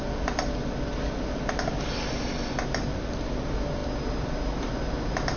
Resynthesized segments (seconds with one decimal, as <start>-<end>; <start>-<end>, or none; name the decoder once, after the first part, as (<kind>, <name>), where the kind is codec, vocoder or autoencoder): none